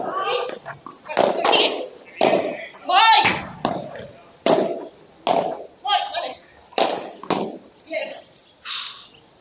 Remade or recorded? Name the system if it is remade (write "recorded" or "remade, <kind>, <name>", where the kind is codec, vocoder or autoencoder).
recorded